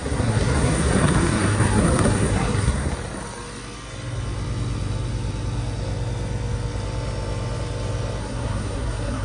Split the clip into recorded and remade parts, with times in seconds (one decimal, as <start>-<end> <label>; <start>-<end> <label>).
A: 0.0-2.9 remade; 2.9-8.2 recorded; 8.2-9.2 remade